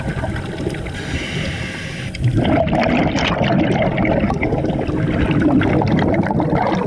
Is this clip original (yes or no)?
yes